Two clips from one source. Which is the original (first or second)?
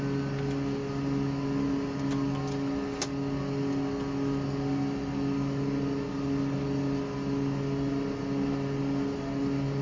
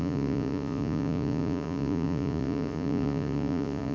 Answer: first